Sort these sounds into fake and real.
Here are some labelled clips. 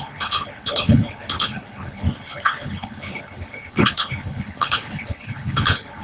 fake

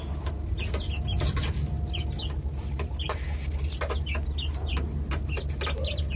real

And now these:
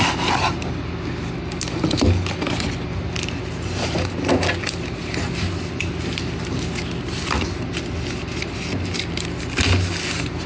real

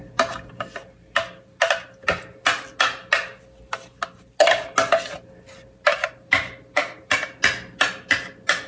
real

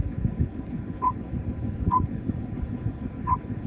fake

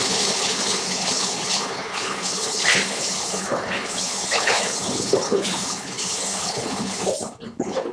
fake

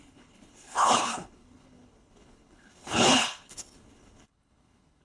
fake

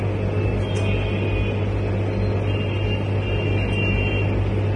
real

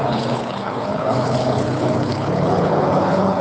fake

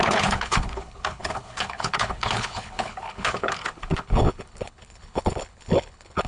fake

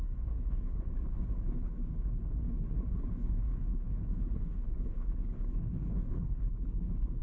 fake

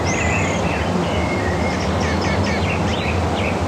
real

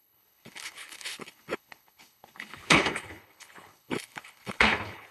fake